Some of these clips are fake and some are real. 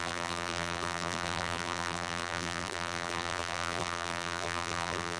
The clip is fake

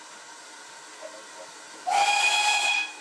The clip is real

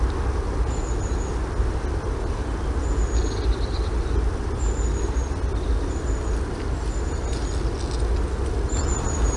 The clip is real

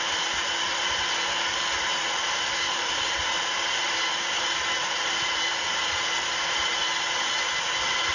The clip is fake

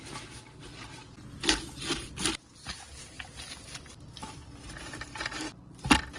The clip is real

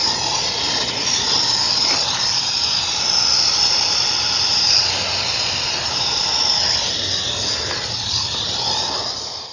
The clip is real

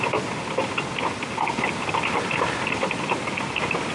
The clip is real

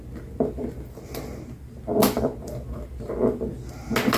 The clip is real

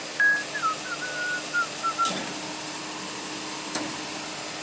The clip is real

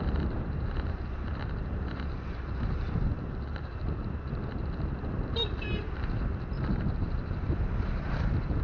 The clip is fake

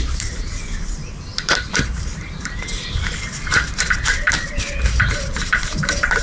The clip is fake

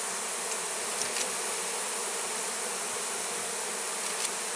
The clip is real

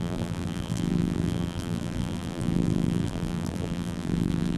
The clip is fake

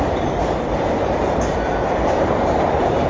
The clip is fake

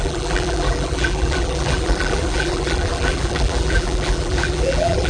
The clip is fake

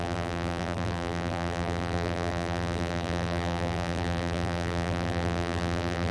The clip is fake